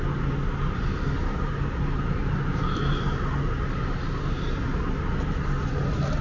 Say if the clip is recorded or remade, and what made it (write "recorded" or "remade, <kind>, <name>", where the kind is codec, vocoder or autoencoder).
recorded